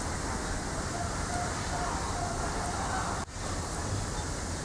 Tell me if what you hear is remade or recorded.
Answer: recorded